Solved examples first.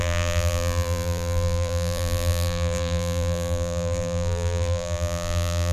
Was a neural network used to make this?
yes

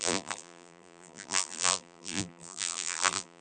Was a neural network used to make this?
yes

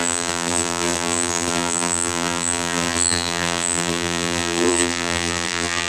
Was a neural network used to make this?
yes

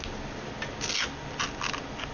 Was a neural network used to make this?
no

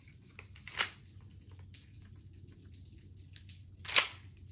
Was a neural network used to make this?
no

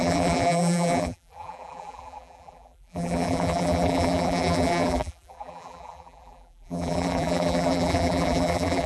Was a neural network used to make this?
yes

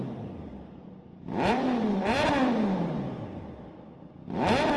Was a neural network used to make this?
yes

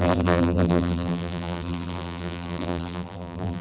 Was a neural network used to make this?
yes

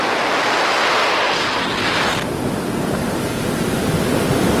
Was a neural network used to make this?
no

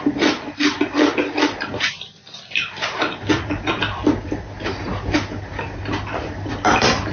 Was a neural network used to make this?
no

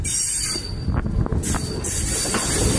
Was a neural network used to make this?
no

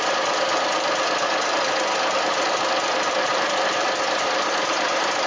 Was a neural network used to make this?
yes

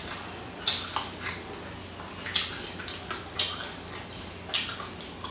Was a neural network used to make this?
no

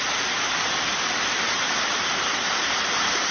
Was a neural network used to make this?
yes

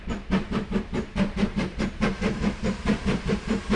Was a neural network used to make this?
yes